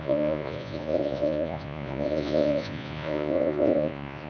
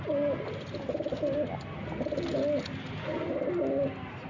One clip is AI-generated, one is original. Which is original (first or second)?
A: second